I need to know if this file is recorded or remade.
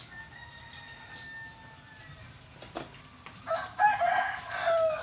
recorded